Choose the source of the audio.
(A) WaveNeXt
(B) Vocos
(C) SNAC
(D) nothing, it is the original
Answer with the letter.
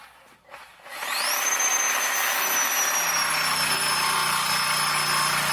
D